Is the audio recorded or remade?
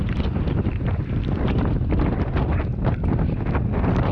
recorded